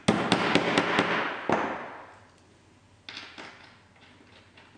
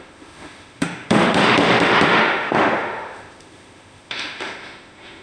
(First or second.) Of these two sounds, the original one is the first